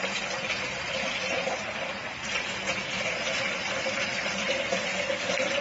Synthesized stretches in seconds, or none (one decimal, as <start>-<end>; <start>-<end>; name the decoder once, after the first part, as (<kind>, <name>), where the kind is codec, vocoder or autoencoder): 0.0-5.6 (vocoder, BigVGAN v2)